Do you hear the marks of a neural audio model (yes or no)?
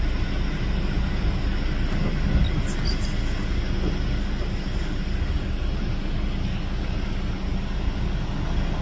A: no